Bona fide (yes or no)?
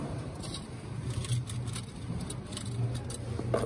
yes